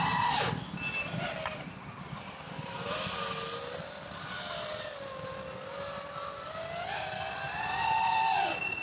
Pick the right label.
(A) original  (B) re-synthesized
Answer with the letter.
A